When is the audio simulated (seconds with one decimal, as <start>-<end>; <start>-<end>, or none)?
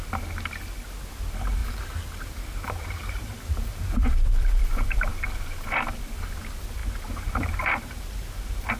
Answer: 1.6-5.1; 6.8-7.5